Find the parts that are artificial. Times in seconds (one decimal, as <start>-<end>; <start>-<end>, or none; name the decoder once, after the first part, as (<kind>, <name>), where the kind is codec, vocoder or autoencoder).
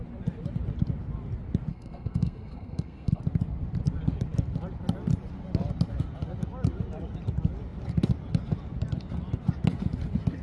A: 1.7-3.2 (codec, SNAC)